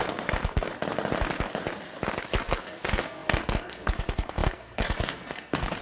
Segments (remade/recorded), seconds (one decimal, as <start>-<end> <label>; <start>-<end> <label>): 0.0-0.7 remade; 0.7-2.5 recorded; 2.5-5.8 remade

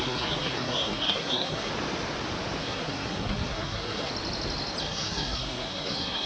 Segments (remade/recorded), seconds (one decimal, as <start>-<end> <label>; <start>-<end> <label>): 0.0-1.7 remade; 1.7-2.6 recorded; 2.6-4.1 remade; 4.1-4.8 recorded; 4.8-6.3 remade

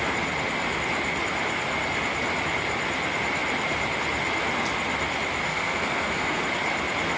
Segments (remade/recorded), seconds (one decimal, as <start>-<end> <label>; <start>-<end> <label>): 0.0-5.5 recorded; 5.5-6.4 remade; 6.4-7.2 recorded

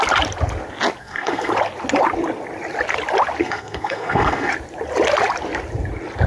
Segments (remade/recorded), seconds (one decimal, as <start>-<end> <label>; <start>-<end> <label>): 0.0-1.0 recorded; 1.0-1.5 remade; 1.5-3.4 recorded; 3.4-4.5 remade; 4.5-6.3 recorded

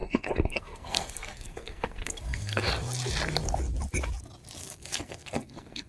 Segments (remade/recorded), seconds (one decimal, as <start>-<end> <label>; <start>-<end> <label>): 0.0-2.7 remade; 2.7-4.6 recorded; 4.6-5.9 remade

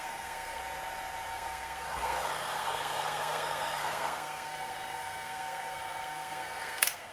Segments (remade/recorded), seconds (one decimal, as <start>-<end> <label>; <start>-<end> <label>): 0.0-0.6 remade; 0.6-1.3 recorded; 1.3-7.1 remade

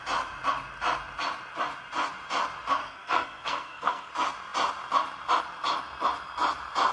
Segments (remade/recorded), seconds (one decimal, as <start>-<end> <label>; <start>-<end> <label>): 0.0-2.8 recorded; 2.8-4.1 remade; 4.1-6.9 recorded

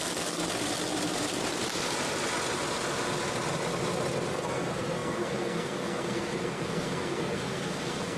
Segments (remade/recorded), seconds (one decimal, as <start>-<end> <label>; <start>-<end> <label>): 0.0-0.4 remade; 0.4-4.3 recorded; 4.3-8.2 remade